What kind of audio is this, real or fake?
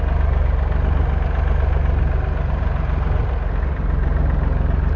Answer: real